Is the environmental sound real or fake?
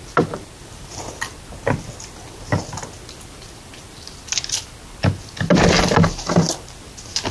real